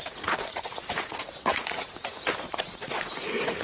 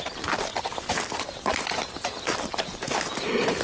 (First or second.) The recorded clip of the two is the second